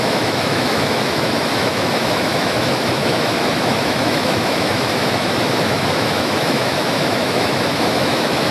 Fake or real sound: fake